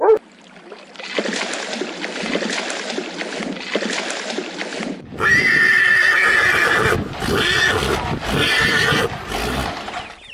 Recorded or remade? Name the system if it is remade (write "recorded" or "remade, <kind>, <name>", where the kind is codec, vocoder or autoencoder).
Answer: recorded